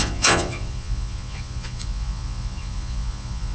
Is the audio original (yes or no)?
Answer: no